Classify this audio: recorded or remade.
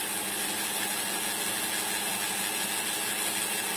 recorded